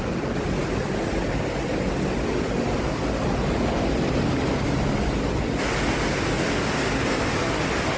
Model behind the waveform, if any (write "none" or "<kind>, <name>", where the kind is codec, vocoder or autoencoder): none